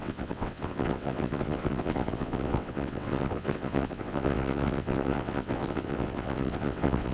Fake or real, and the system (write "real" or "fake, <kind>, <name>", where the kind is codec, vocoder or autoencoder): fake, vocoder, WaveNeXt